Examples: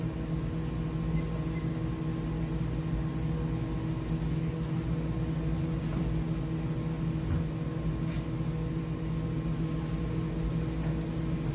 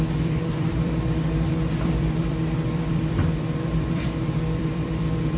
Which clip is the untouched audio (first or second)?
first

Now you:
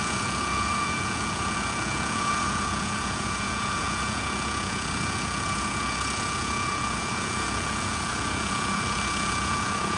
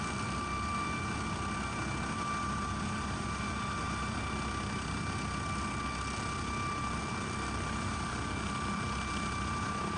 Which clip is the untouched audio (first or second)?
second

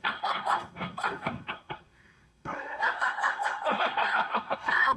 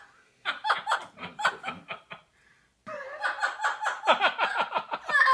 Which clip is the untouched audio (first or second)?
second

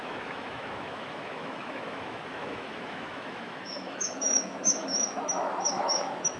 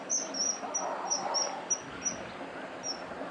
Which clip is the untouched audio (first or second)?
second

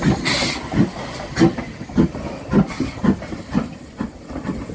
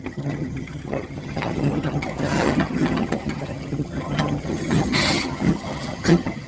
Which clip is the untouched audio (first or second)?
first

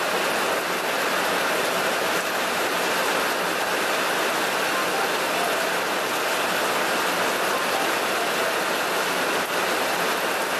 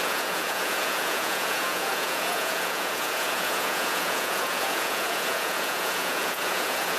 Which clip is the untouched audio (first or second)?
first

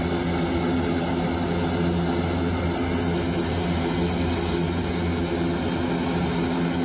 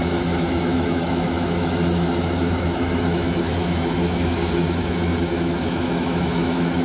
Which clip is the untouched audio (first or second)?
first